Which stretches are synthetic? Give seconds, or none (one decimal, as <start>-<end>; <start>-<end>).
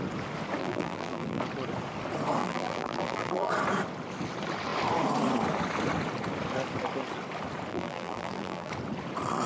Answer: 0.6-1.4; 2.4-3.5; 7.7-8.7